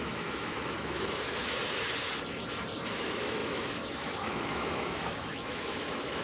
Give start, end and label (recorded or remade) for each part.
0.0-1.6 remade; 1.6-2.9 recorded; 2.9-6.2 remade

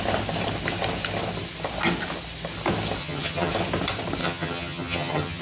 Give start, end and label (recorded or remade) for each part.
0.0-3.0 recorded; 3.0-3.5 remade; 3.5-4.2 recorded; 4.2-5.4 remade

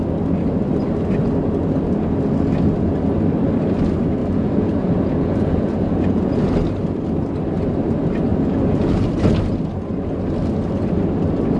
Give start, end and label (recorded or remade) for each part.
0.0-4.2 recorded; 4.2-6.4 remade; 6.4-8.3 recorded; 8.3-9.1 remade; 9.1-11.6 recorded

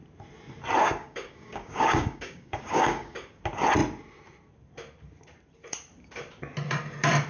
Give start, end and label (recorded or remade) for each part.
0.0-0.8 recorded; 0.8-3.4 remade; 3.4-7.3 recorded

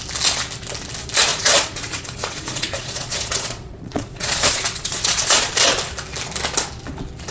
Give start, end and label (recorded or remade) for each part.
0.0-1.3 recorded; 1.3-5.5 remade; 5.5-7.3 recorded

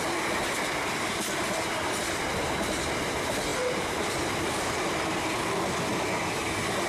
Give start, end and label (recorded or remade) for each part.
0.0-6.9 recorded